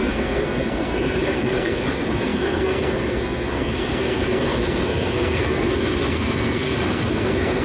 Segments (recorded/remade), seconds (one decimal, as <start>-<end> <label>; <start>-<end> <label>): 0.0-7.6 remade